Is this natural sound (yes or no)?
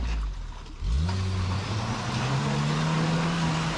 yes